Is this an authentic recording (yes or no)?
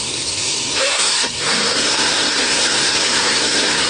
no